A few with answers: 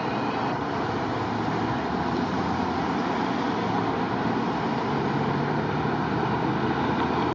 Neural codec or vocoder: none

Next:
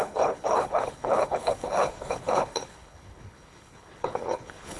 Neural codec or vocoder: codec, HILCodec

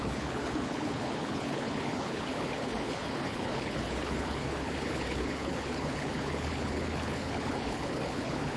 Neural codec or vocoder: codec, HILCodec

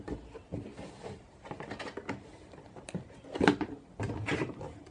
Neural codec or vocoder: none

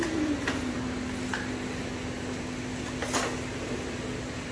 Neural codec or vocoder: none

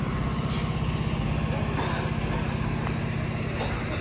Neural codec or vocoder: none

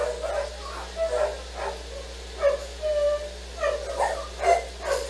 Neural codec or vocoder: none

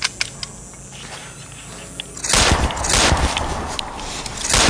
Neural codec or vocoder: none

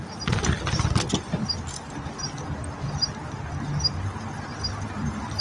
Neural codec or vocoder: none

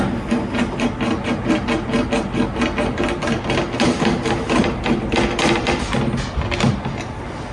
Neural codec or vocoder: none